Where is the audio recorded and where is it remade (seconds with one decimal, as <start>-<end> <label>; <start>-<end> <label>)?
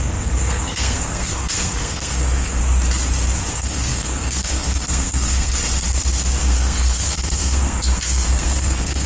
0.0-2.6 remade; 2.6-3.5 recorded; 3.5-5.6 remade; 5.6-6.4 recorded; 6.4-9.1 remade